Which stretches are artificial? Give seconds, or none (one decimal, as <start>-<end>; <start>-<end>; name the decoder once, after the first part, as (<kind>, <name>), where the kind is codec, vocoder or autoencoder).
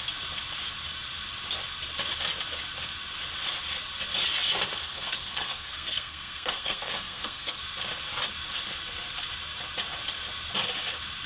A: 4.8-7.6 (codec, SNAC)